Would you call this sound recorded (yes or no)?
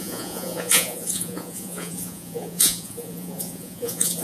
no